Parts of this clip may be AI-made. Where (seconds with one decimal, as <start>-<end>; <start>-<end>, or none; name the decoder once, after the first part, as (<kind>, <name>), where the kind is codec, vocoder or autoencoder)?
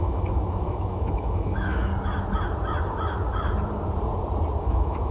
0.0-1.9 (autoencoder, DAC-VAE); 4.6-5.1